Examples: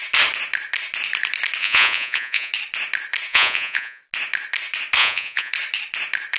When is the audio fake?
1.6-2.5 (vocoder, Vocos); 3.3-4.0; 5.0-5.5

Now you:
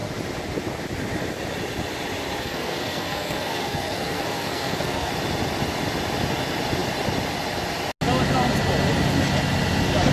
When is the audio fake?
2.4-5.1 (codec, SNAC)

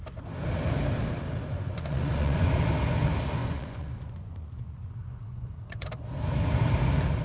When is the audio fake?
1.6-2.5 (vocoder, Vocos); 3.4-5.9